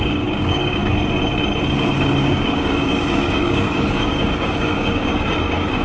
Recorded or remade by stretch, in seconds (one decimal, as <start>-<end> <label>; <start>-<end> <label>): 0.0-0.8 remade; 0.8-2.2 recorded; 2.2-5.8 remade